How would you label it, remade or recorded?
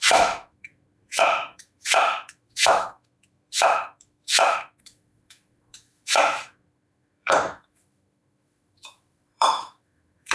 remade